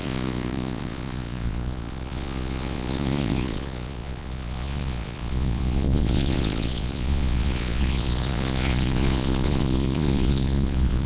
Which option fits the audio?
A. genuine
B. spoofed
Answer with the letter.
B